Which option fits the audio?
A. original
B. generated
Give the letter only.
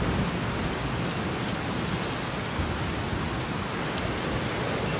A